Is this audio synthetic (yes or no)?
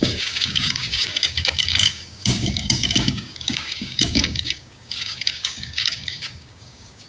yes